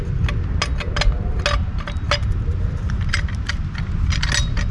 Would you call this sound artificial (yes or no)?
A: no